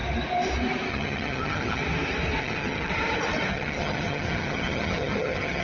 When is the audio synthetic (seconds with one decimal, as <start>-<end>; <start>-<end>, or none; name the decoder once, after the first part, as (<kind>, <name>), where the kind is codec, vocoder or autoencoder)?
0.9-1.8 (vocoder, HiFi-GAN); 2.4-2.9; 3.5-5.6